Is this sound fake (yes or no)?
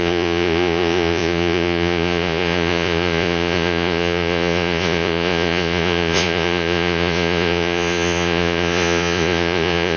yes